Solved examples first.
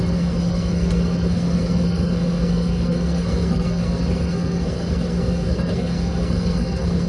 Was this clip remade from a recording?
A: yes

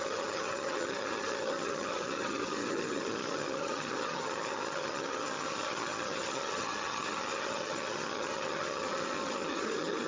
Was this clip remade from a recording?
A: yes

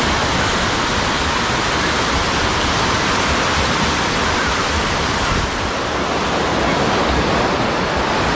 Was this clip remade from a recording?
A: no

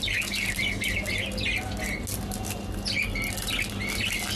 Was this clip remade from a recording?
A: no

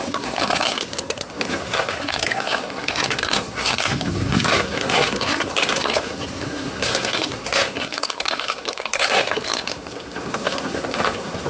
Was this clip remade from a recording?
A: yes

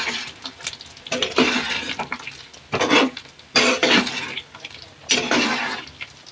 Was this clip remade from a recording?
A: no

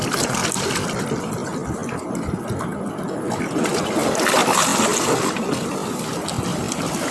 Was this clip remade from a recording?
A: no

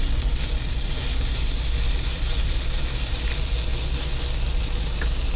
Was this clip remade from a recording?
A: yes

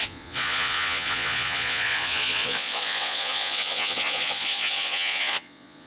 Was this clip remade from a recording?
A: yes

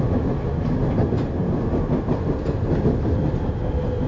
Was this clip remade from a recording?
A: no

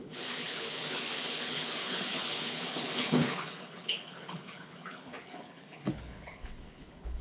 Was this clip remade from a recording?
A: yes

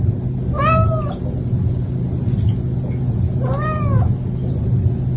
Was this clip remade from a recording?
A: no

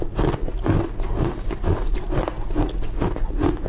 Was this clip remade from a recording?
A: no